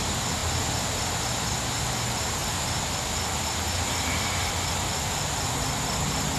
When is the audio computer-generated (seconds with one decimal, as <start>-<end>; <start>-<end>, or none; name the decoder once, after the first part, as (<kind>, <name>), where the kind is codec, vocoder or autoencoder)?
none